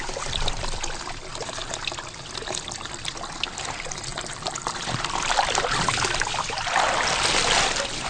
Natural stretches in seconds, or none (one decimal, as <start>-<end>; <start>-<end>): 0.0-4.1; 5.9-8.1